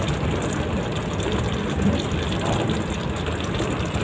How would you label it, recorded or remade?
recorded